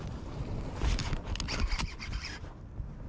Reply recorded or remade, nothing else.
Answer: recorded